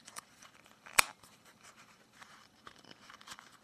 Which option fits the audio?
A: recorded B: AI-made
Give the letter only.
B